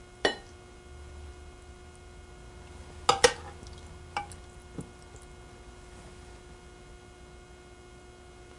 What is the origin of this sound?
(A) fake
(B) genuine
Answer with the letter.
B